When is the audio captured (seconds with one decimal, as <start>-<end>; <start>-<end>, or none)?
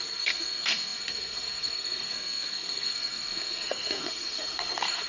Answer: none